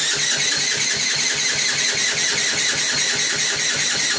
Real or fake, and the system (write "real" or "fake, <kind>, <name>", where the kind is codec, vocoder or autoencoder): real